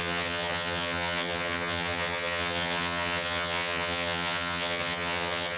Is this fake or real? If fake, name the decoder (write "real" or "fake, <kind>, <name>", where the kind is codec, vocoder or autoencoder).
fake, vocoder, HiFi-GAN